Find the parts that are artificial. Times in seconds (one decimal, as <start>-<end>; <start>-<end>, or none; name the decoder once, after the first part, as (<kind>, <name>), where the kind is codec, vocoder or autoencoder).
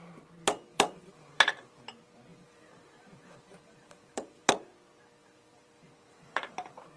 0.7-1.7 (vocoder, BigVGAN v2); 2.3-4.5; 5.2-7.0